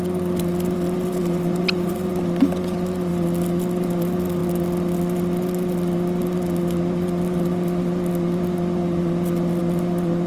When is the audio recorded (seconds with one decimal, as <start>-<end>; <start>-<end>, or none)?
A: 0.0-1.2; 2.1-10.3